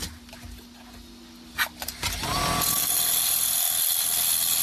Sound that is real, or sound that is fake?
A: real